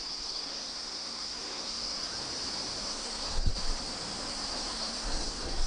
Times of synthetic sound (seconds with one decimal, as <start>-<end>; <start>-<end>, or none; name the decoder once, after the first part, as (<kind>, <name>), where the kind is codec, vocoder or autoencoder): 0.0-2.1 (codec, SNAC); 2.8-3.5; 4.3-5.7